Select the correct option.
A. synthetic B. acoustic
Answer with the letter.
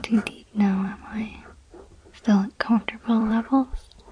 A